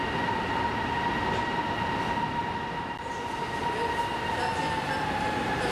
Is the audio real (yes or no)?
yes